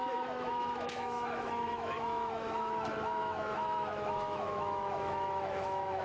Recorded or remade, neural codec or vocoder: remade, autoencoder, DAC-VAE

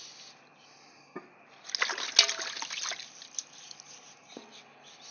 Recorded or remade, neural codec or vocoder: recorded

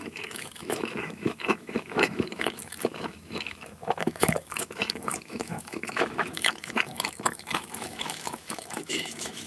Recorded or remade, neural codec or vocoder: remade, autoencoder, DAC-VAE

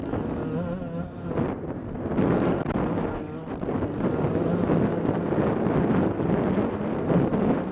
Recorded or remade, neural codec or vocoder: recorded